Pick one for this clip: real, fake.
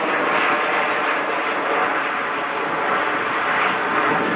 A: real